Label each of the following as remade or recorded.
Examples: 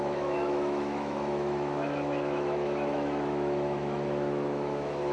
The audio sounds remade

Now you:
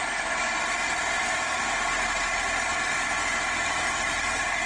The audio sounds recorded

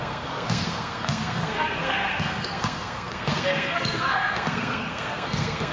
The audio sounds remade